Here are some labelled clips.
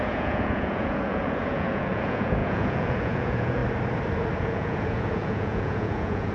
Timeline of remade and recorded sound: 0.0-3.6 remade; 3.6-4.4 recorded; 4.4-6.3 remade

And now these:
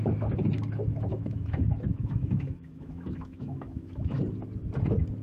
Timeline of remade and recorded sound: 0.0-1.1 recorded; 1.1-4.2 remade; 4.2-5.2 recorded

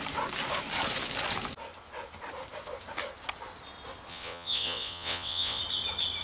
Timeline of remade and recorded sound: 0.0-4.1 recorded; 4.1-5.6 remade; 5.6-6.2 recorded

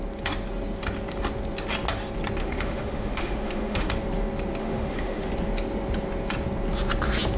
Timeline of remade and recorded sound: 0.0-2.4 recorded; 2.4-3.9 remade; 3.9-4.6 recorded; 4.6-5.3 remade; 5.3-7.4 recorded

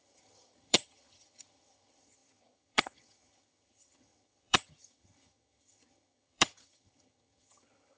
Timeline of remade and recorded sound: 0.0-8.0 remade

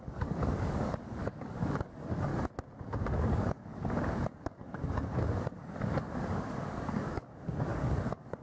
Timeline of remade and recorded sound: 0.0-2.3 remade; 2.3-3.1 recorded; 3.1-8.4 remade